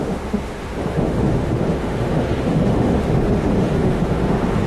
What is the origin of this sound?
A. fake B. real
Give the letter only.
A